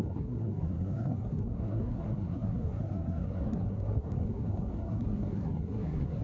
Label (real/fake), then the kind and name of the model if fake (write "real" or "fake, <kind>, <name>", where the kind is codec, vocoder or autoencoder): fake, codec, SNAC